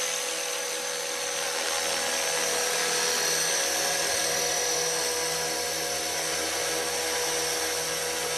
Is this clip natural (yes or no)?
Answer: yes